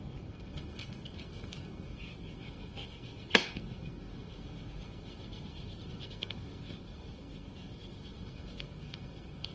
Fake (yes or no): yes